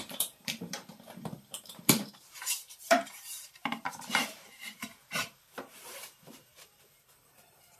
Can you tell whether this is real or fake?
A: fake